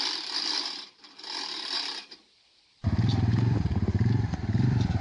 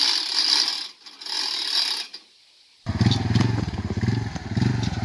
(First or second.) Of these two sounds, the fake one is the first